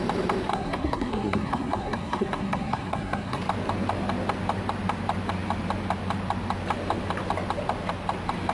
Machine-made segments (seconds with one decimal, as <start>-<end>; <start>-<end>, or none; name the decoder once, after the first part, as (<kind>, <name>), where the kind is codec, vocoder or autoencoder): 0.5-3.4 (codec, SNAC)